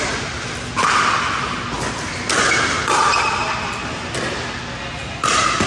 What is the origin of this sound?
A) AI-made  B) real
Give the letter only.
B